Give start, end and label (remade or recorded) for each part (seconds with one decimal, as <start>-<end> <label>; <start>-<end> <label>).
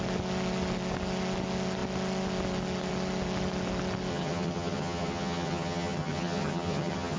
0.0-4.1 recorded; 4.1-7.2 remade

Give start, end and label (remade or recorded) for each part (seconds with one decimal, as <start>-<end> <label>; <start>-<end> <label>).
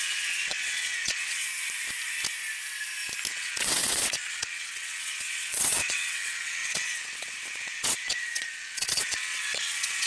0.0-1.4 remade; 1.4-3.3 recorded; 3.3-10.1 remade